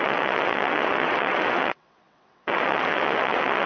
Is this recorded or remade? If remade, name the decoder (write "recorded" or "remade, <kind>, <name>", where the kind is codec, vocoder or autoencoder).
remade, vocoder, WaveNeXt